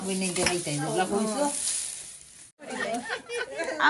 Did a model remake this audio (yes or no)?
no